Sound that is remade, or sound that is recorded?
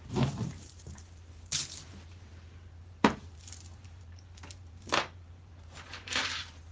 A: remade